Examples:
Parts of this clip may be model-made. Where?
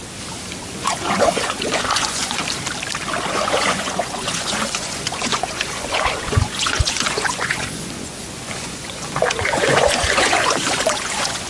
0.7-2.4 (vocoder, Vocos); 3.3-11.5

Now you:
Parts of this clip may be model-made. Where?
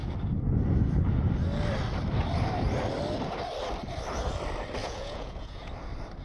4.8-5.7 (vocoder, Vocos)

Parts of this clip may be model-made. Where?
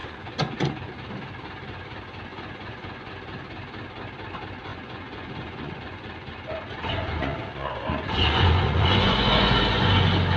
0.0-0.9 (vocoder, Vocos); 2.3-3.1; 4.7-9.9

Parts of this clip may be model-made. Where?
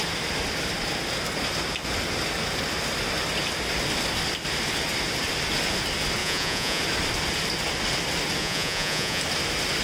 6.2-6.8 (vocoder, Vocos); 8.4-9.2